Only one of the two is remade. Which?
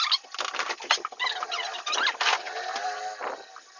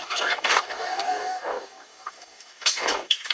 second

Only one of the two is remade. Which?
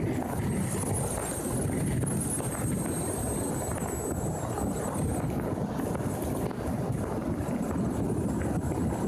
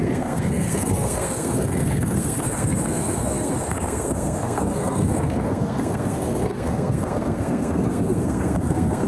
second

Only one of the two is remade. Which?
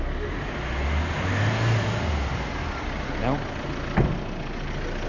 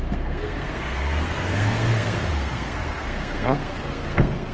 second